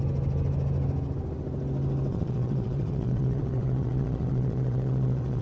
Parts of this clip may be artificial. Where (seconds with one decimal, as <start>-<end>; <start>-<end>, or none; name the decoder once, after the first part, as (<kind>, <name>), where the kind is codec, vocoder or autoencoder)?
2.1-5.4 (vocoder, Vocos)